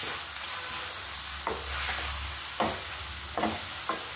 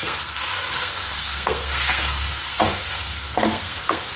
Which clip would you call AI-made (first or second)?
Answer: second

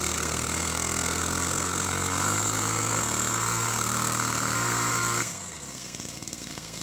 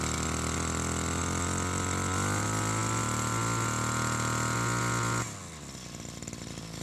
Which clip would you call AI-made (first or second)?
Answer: first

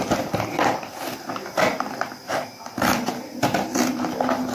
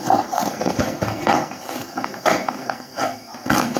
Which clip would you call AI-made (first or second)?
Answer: second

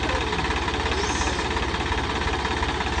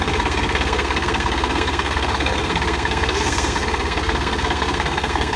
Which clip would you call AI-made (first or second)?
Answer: second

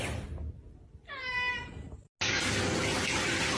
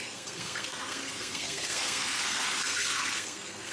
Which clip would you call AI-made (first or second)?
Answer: second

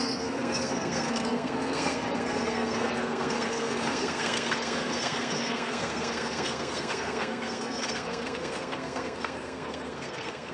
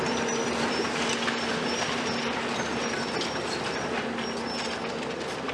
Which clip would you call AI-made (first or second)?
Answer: first